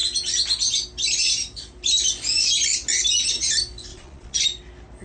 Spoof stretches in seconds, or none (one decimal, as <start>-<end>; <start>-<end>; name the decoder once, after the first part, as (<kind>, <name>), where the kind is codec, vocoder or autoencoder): 3.9-4.4 (vocoder, Vocos)